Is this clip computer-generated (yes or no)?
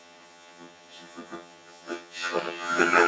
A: yes